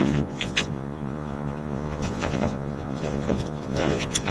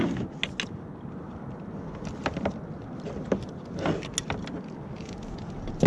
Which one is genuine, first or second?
second